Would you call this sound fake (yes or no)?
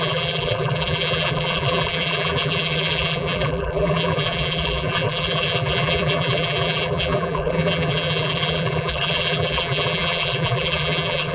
yes